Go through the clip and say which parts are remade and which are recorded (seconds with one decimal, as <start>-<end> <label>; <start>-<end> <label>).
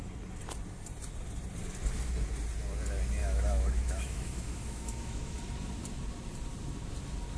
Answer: 0.0-3.2 recorded; 3.2-5.5 remade; 5.5-7.4 recorded